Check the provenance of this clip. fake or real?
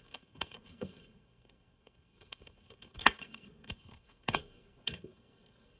fake